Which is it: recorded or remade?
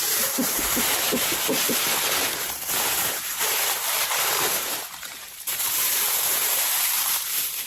remade